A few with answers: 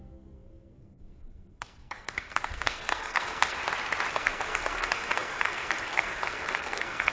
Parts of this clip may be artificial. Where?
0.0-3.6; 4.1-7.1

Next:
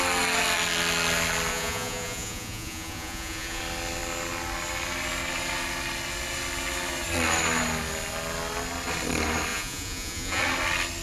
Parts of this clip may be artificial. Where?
1.5-3.6; 9.5-10.4

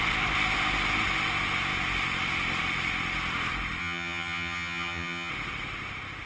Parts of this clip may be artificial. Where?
3.8-5.3

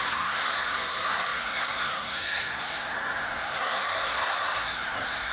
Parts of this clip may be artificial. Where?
0.0-5.3

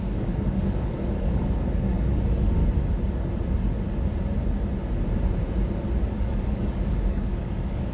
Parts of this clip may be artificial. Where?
0.0-2.6; 6.1-7.9

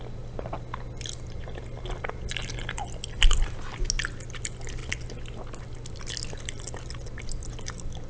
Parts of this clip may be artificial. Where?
none

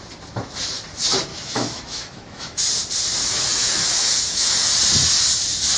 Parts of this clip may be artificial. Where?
1.3-2.6; 3.2-4.7

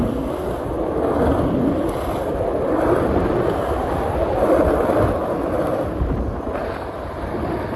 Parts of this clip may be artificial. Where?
none